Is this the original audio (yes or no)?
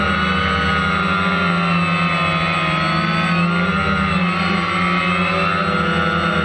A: yes